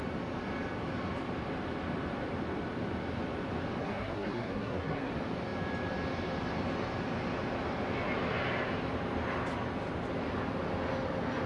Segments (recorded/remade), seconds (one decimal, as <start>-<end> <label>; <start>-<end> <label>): 0.0-3.8 recorded; 3.8-5.1 remade; 5.1-11.5 recorded